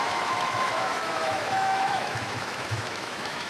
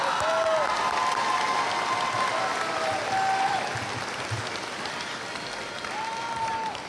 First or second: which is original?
second